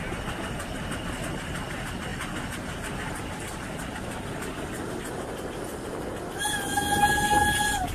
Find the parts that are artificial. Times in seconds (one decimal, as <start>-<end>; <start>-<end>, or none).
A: none